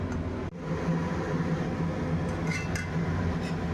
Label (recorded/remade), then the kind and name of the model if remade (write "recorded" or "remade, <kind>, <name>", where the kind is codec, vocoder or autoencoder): recorded